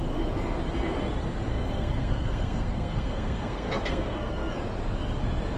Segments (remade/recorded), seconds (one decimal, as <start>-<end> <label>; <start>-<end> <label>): 0.0-1.5 recorded; 1.5-4.5 remade; 4.5-5.6 recorded